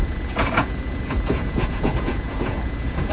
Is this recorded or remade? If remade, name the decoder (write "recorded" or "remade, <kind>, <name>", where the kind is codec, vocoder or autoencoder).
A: remade, vocoder, Vocos